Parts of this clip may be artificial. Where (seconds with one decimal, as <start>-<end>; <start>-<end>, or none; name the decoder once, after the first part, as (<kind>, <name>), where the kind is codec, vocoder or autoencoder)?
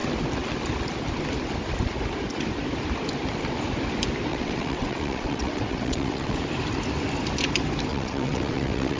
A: 4.3-6.4 (vocoder, WaveNeXt); 7.9-9.0